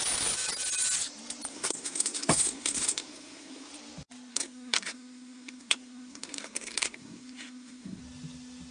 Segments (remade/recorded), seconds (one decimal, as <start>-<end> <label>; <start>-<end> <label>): 0.0-1.5 recorded; 1.5-3.7 remade; 3.7-4.3 recorded; 4.3-8.0 remade; 8.0-8.7 recorded